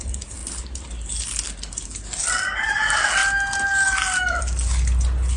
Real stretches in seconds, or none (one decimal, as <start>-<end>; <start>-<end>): 0.0-5.4